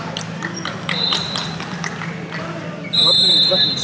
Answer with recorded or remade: recorded